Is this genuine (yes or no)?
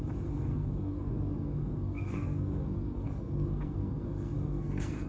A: no